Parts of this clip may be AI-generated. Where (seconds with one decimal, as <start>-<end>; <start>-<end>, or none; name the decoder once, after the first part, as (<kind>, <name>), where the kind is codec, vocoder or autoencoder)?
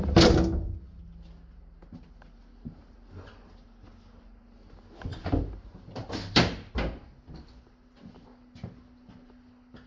none